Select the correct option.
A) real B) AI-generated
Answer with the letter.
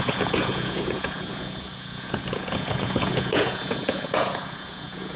B